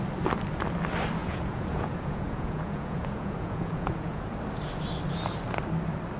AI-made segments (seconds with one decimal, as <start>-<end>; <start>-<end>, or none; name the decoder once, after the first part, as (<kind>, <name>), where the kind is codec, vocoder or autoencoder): 1.2-4.3 (vocoder, Vocos)